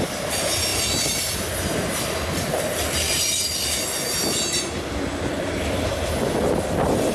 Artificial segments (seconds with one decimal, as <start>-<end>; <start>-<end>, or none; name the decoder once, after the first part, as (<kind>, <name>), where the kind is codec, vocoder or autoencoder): none